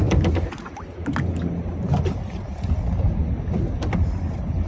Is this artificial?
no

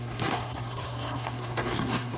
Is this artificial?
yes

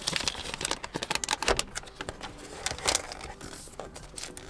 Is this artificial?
no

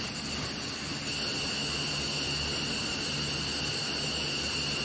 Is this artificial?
no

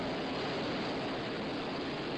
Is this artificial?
no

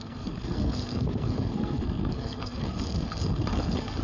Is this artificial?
yes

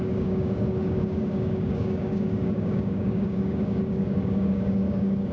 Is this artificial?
yes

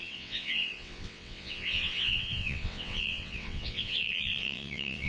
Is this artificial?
yes